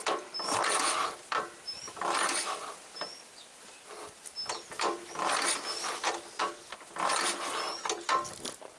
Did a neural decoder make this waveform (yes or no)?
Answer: no